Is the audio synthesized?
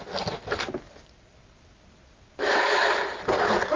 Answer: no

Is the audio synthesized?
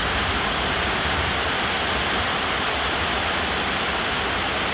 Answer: no